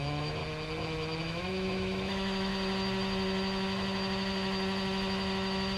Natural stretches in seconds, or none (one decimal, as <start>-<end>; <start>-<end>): 0.4-1.2; 2.5-5.8